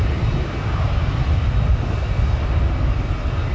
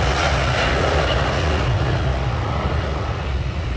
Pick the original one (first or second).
first